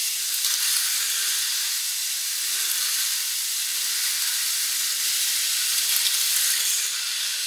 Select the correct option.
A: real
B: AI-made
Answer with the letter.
A